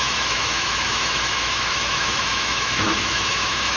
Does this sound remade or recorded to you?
remade